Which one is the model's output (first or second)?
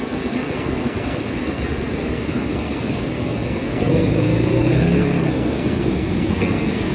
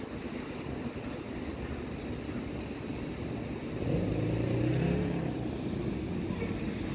first